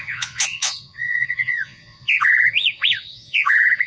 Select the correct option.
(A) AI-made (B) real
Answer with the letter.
A